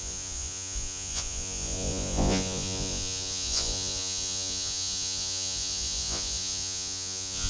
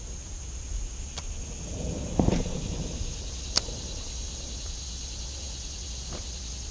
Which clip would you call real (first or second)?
second